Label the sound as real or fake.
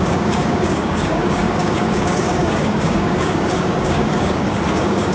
fake